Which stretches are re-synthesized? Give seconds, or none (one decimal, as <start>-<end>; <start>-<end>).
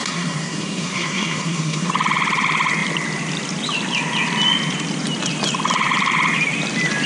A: 0.0-1.9